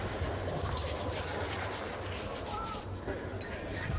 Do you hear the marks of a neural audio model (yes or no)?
no